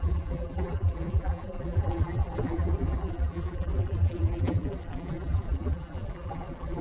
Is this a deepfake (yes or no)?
yes